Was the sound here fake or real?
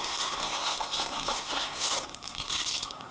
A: fake